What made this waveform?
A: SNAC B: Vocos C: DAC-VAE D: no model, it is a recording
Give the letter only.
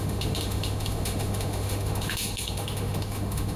C